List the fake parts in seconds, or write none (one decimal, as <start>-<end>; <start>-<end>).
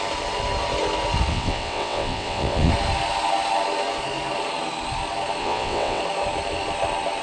1.3-2.7; 5.4-6.0